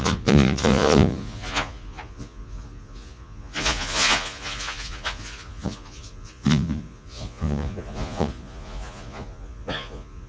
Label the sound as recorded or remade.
remade